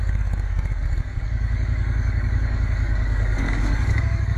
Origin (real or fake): fake